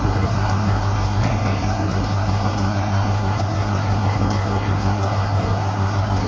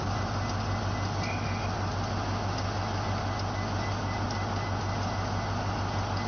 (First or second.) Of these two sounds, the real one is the second